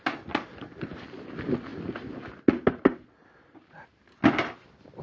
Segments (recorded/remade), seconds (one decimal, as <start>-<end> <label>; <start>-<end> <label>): 0.0-5.0 recorded